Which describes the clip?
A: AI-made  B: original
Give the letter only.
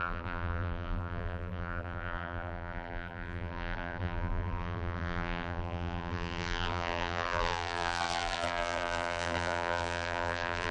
A